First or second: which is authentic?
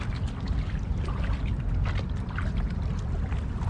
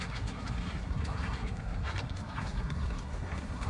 first